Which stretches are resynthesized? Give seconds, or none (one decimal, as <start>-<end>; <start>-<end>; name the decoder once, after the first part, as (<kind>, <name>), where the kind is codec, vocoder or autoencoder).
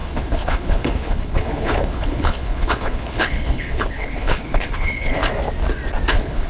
0.0-5.2 (codec, HILCodec); 6.1-6.5